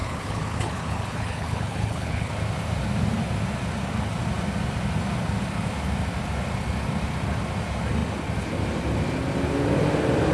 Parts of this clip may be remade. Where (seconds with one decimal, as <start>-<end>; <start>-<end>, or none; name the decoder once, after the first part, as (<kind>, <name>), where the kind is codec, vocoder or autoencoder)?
0.0-2.3 (codec, HILCodec)